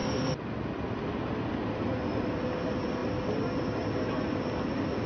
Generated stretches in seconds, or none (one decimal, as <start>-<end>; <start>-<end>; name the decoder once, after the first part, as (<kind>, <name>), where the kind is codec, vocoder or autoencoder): none